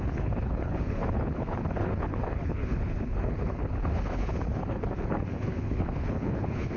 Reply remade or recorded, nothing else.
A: remade